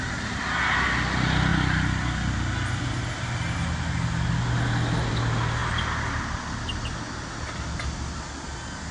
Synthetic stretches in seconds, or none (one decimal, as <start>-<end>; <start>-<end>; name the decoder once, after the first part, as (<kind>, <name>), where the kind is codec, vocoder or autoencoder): none